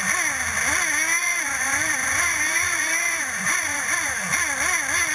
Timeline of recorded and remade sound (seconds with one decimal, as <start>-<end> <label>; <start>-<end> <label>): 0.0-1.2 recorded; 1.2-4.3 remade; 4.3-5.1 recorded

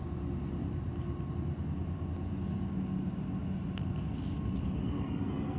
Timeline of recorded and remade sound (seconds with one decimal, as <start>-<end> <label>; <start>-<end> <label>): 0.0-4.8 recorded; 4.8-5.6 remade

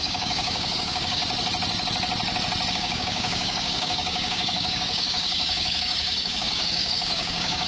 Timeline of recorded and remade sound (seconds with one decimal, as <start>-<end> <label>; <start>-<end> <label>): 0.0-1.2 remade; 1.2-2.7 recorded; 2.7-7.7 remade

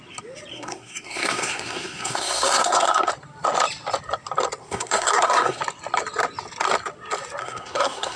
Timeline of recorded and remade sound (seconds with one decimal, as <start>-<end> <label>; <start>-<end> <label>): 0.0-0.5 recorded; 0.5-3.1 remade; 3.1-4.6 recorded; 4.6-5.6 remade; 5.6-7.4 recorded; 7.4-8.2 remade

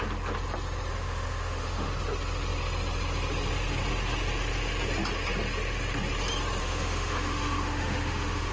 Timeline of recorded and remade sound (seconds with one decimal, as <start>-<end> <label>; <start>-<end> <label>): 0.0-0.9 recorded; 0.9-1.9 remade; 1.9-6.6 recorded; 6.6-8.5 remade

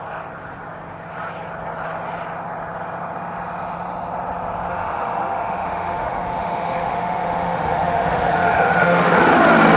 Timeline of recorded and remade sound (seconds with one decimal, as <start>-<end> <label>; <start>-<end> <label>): 0.0-4.7 recorded; 4.7-9.2 remade; 9.2-9.8 recorded

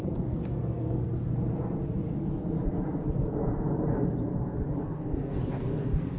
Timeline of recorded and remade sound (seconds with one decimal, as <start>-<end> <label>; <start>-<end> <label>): 0.0-1.1 remade; 1.1-4.8 recorded; 4.8-6.2 remade